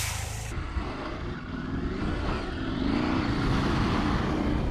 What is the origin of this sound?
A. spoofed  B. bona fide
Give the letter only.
B